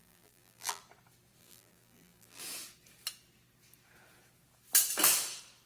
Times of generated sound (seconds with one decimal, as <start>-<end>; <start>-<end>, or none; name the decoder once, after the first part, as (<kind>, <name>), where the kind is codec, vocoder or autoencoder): 0.0-0.8 (vocoder, BigVGAN v2); 1.4-2.4